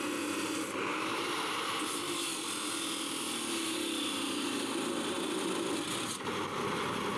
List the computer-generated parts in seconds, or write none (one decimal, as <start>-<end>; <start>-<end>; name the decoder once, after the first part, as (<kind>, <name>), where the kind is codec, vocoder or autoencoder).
none